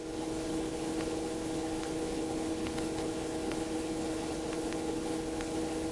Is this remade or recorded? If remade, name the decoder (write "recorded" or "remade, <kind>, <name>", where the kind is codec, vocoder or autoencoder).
remade, codec, HILCodec